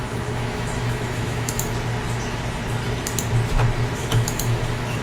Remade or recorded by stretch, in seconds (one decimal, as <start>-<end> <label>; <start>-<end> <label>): 0.0-1.7 remade; 1.7-4.0 recorded; 4.0-5.0 remade